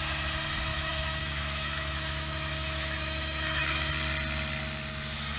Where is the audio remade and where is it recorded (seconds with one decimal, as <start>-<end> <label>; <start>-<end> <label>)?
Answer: 0.0-0.7 recorded; 0.7-3.9 remade; 3.9-5.4 recorded